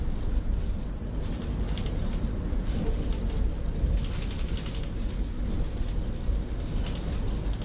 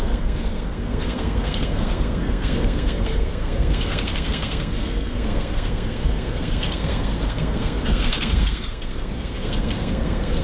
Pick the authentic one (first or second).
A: first